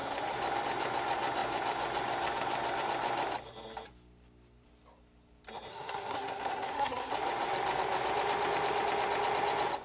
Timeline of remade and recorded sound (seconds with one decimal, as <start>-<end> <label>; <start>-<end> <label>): 0.0-5.7 recorded; 5.7-7.1 remade; 7.1-9.8 recorded